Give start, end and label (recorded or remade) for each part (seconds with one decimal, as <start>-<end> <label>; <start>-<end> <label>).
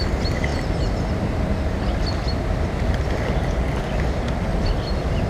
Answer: 0.0-5.3 recorded